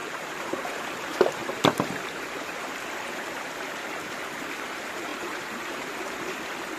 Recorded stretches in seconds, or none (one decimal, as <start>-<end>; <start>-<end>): 0.8-1.4; 3.9-5.1; 6.2-6.8